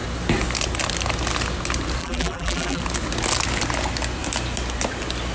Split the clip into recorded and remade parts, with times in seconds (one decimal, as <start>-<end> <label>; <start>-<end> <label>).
0.0-2.0 recorded; 2.0-2.8 remade; 2.8-5.3 recorded